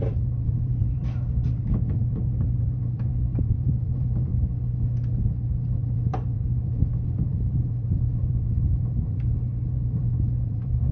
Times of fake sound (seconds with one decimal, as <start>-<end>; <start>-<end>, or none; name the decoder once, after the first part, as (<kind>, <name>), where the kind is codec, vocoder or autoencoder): 0.0-4.3 (vocoder, BigVGAN v2); 5.7-10.9